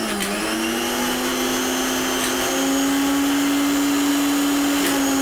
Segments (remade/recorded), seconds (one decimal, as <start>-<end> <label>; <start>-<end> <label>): 0.0-5.2 recorded